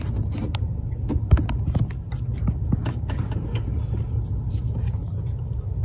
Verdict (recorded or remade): recorded